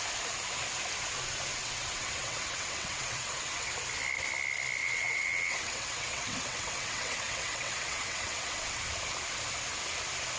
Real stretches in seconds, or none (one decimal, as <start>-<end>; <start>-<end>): 0.0-1.5; 3.7-4.8; 8.8-10.4